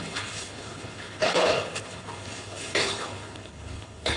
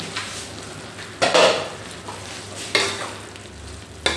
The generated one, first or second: first